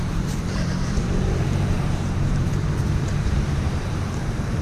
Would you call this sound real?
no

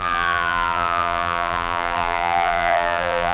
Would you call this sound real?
no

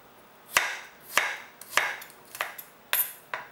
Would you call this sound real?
yes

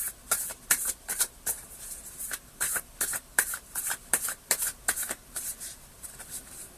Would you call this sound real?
no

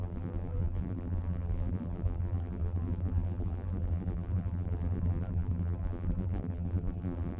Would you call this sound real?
no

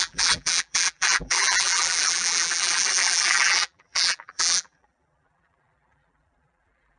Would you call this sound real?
no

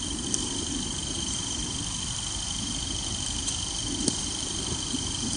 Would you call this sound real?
no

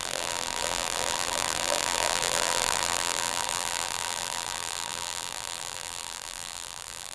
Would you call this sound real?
no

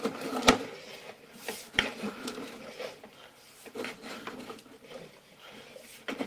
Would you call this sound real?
yes